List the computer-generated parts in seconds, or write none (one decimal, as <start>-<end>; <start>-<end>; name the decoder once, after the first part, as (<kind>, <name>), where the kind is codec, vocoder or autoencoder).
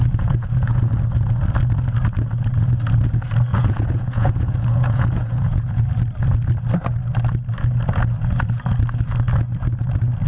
0.0-0.9 (vocoder, Vocos); 3.5-5.8